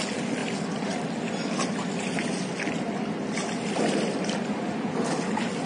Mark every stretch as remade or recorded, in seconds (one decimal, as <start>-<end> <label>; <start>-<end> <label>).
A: 0.0-5.7 recorded